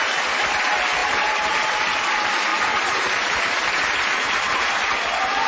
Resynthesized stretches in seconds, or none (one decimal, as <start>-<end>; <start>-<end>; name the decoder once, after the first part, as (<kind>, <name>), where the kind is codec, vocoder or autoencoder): 1.0-1.8 (vocoder, BigVGAN v2); 2.5-4.3